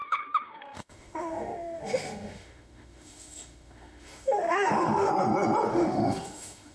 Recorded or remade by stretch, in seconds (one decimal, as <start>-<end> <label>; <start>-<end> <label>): 0.0-5.1 remade; 5.1-5.7 recorded; 5.7-6.7 remade